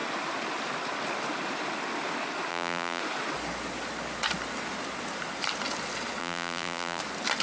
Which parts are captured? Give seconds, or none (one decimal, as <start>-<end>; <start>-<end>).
0.0-2.5; 3.0-6.2; 7.0-7.4